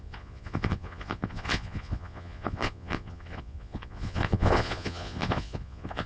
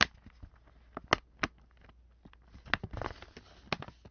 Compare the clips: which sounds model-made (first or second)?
first